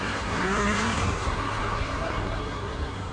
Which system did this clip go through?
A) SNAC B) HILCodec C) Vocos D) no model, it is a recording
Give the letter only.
A